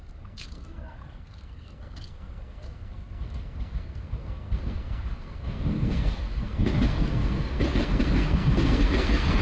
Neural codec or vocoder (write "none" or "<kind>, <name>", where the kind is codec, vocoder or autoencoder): codec, SNAC